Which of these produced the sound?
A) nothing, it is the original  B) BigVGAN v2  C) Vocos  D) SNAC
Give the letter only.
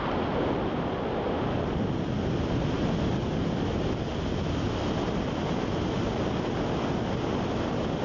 A